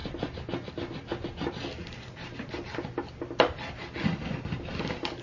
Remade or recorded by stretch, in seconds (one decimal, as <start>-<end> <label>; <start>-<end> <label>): 0.0-1.8 recorded; 1.8-2.7 remade; 2.7-5.2 recorded